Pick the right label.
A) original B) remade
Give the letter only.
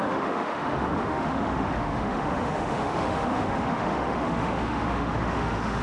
B